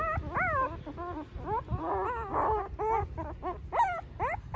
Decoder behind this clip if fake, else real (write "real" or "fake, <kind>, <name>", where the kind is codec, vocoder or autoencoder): real